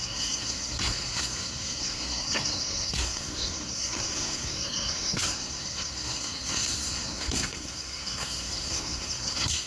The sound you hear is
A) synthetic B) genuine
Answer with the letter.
A